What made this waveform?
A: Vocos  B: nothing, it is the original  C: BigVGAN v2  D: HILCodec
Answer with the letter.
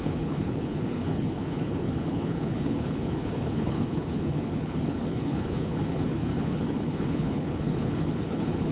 D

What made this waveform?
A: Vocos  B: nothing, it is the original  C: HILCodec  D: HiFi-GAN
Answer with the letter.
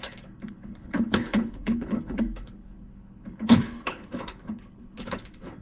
C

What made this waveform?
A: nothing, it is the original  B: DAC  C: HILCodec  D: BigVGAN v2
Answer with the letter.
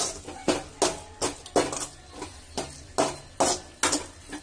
A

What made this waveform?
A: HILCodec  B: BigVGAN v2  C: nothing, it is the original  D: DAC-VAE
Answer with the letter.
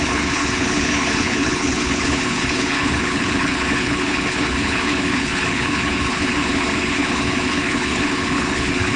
A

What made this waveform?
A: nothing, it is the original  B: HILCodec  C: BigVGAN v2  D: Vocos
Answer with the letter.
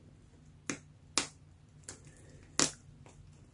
A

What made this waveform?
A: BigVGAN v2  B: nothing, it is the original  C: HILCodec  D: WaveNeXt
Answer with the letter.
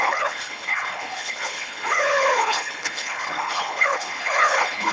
C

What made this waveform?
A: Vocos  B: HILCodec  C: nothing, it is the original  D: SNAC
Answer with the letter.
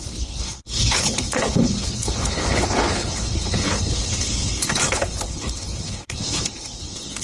B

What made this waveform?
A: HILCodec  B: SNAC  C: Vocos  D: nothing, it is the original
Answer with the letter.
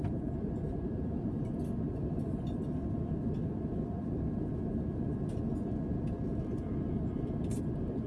D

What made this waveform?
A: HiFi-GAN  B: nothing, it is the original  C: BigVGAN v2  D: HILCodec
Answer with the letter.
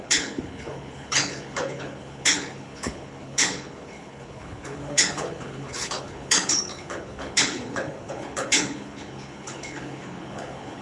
D